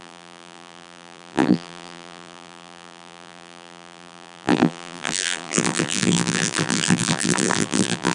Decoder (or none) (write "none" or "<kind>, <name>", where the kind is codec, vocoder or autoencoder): vocoder, BigVGAN v2